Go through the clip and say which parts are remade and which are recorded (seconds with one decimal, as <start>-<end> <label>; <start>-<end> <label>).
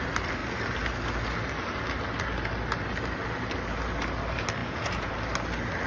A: 0.0-4.6 recorded; 4.6-5.1 remade; 5.1-5.9 recorded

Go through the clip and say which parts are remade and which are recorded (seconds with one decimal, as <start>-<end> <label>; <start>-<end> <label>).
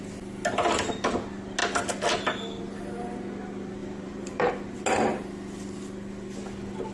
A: 0.0-3.8 recorded; 3.8-4.5 remade; 4.5-6.9 recorded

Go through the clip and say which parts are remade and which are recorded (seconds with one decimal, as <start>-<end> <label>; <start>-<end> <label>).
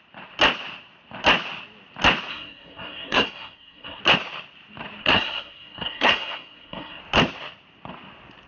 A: 0.0-2.3 recorded; 2.3-4.0 remade; 4.0-5.0 recorded; 5.0-7.0 remade; 7.0-8.5 recorded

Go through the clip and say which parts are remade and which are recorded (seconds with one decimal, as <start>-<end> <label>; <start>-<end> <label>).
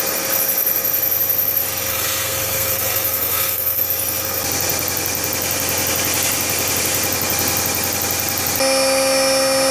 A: 0.0-1.9 recorded; 1.9-3.8 remade; 3.8-9.7 recorded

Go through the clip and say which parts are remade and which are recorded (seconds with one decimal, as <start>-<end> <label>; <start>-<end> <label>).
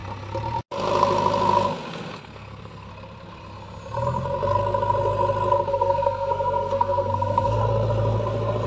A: 0.0-1.9 recorded; 1.9-2.9 remade; 2.9-5.7 recorded; 5.7-7.6 remade; 7.6-8.7 recorded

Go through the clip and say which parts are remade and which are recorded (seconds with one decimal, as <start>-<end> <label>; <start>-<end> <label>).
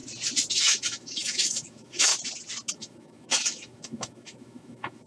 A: 0.0-0.5 recorded; 0.5-2.1 remade; 2.1-2.7 recorded; 2.7-5.1 remade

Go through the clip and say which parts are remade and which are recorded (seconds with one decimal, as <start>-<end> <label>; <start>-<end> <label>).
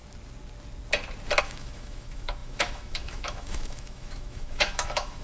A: 0.0-1.4 recorded; 1.4-5.2 remade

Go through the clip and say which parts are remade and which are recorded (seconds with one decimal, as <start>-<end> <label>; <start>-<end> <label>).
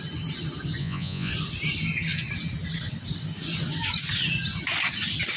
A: 0.0-0.8 recorded; 0.8-1.3 remade; 1.3-5.4 recorded